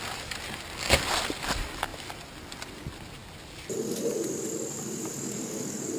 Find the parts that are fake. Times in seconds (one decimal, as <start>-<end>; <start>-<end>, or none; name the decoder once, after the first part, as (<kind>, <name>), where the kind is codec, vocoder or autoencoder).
none